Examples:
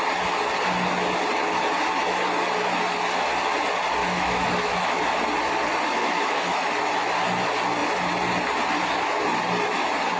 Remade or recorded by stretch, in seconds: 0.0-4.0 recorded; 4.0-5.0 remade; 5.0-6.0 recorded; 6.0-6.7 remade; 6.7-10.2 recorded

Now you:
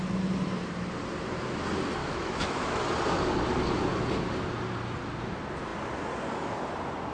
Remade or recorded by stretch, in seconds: 0.0-2.0 recorded; 2.0-2.8 remade; 2.8-7.1 recorded

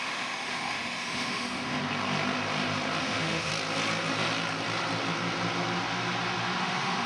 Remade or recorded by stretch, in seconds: 0.0-1.8 remade; 1.8-3.0 recorded; 3.0-3.5 remade; 3.5-6.6 recorded; 6.6-7.1 remade

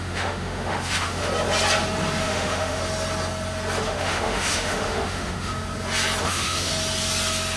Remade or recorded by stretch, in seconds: 0.0-1.3 remade; 1.3-2.2 recorded; 2.2-2.8 remade; 2.8-3.8 recorded; 3.8-5.5 remade; 5.5-6.2 recorded; 6.2-6.7 remade; 6.7-7.6 recorded

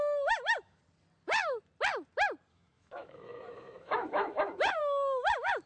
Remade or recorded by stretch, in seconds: 0.0-0.8 remade; 0.8-2.5 recorded; 2.5-5.7 remade